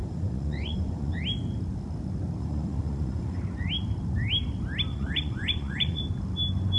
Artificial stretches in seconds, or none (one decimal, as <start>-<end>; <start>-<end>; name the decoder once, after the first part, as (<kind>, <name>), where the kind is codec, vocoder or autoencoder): 0.0-1.2 (vocoder, Vocos); 2.4-3.4; 4.9-6.0